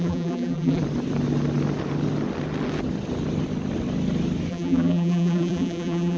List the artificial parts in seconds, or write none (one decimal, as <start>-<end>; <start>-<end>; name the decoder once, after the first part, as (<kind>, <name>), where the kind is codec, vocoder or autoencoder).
0.0-0.8 (vocoder, BigVGAN v2); 4.5-6.2